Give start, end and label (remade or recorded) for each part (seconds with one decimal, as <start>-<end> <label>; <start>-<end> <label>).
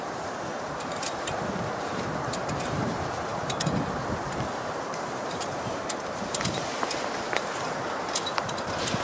0.0-9.0 remade